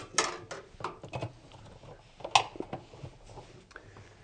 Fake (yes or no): no